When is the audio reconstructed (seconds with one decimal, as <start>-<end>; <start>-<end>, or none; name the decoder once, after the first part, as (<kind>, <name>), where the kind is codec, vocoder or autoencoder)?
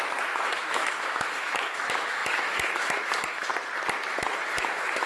0.0-3.5 (autoencoder, DAC-VAE); 4.1-5.1